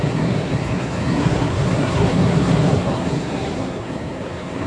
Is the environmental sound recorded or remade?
remade